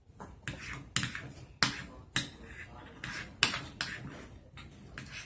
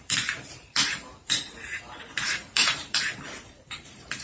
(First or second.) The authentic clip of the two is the first